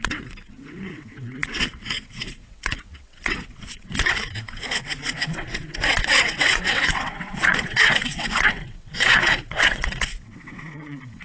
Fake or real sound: fake